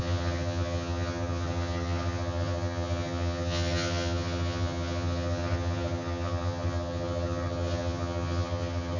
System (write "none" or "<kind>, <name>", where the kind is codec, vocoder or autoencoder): vocoder, HiFi-GAN